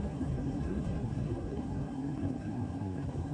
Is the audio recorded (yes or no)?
no